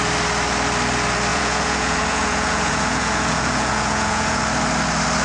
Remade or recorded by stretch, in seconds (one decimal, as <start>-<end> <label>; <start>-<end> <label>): 0.0-1.3 recorded; 1.3-4.4 remade; 4.4-5.2 recorded